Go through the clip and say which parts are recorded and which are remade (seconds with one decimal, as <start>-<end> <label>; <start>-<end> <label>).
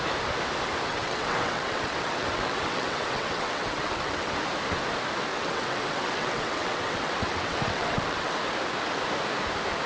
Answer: 0.0-0.9 recorded; 0.9-4.3 remade; 4.3-5.3 recorded; 5.3-8.3 remade; 8.3-9.9 recorded